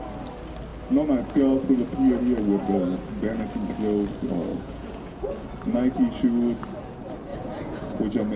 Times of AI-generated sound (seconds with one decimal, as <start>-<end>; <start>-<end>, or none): 4.5-5.3; 7.3-8.0